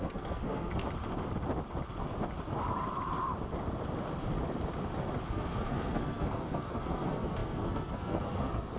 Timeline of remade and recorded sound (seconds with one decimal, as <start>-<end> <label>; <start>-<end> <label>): 0.0-0.7 remade; 0.7-5.3 recorded; 5.3-8.8 remade